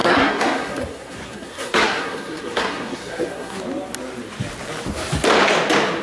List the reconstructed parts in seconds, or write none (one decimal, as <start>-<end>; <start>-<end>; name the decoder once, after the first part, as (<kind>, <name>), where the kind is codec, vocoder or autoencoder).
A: 0.0-3.6 (codec, SNAC)